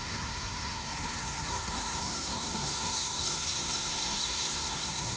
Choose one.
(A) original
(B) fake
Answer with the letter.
B